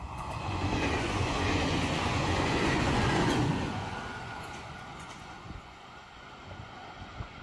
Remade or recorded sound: remade